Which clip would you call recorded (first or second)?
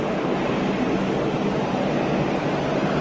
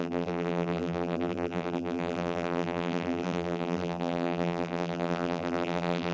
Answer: first